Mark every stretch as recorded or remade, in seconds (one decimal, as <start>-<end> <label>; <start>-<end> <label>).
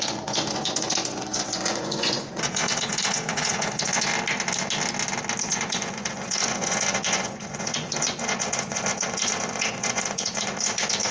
0.0-4.1 remade; 4.1-5.4 recorded; 5.4-11.1 remade